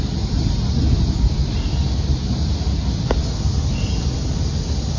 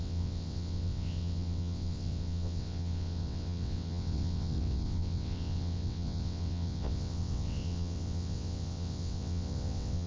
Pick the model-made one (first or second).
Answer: second